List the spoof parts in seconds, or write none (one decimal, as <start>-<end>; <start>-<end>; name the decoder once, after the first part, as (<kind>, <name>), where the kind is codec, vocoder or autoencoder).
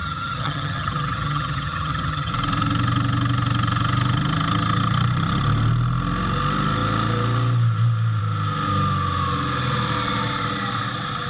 0.0-2.3 (vocoder, HiFi-GAN)